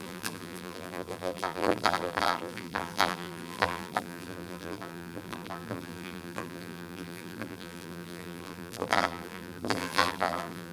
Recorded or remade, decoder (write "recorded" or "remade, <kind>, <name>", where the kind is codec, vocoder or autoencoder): remade, vocoder, BigVGAN v2